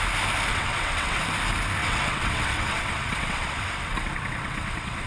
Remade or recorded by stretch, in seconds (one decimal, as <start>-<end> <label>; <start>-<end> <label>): 0.0-0.5 recorded; 0.5-1.2 remade; 1.2-1.8 recorded; 1.8-5.1 remade